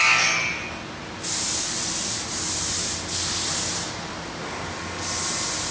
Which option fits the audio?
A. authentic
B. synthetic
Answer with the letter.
A